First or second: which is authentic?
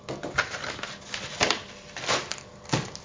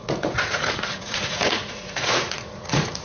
first